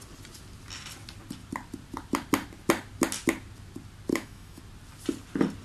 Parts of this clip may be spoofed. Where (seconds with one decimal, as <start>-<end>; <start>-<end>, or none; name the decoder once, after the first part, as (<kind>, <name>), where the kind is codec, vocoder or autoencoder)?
4.1-4.6 (autoencoder, DAC-VAE)